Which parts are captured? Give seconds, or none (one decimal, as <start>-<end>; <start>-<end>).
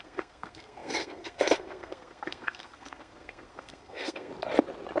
4.3-5.0